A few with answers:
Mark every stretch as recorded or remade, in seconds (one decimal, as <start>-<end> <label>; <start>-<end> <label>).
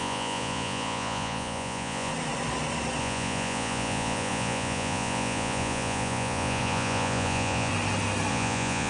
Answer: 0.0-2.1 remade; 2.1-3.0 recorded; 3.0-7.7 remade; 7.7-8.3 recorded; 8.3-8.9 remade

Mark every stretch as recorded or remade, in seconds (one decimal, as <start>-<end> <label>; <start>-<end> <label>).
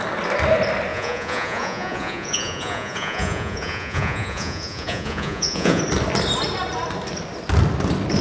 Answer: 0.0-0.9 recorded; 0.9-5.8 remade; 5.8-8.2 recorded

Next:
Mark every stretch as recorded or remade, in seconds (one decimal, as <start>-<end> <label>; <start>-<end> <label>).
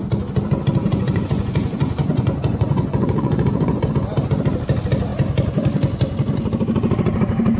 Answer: 0.0-0.8 recorded; 0.8-3.9 remade; 3.9-7.6 recorded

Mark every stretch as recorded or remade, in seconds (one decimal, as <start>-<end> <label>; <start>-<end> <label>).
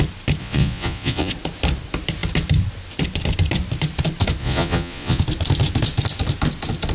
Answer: 0.0-0.4 recorded; 0.4-1.3 remade; 1.3-4.4 recorded; 4.4-5.2 remade; 5.2-6.9 recorded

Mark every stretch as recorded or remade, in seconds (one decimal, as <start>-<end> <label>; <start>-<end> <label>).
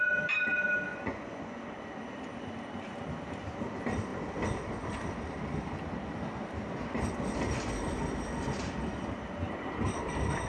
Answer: 0.0-0.9 recorded; 0.9-1.6 remade; 1.6-10.5 recorded